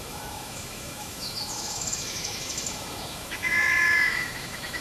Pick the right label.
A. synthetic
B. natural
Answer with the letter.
A